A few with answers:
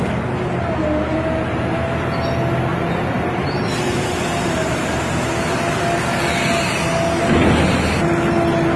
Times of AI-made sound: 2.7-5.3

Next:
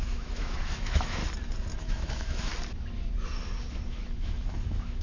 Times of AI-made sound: 0.0-1.2; 1.8-2.5; 3.7-5.0

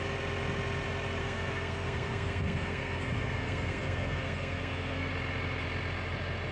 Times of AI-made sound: 1.2-5.1

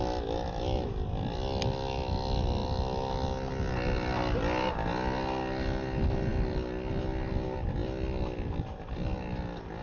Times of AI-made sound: none

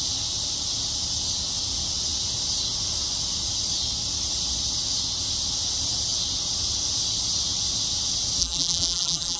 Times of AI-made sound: 8.4-9.4

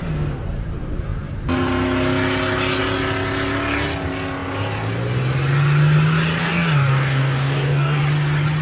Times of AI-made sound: 6.4-8.0